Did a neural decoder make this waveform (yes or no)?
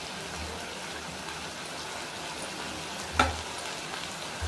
no